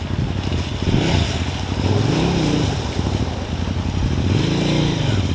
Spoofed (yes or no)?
no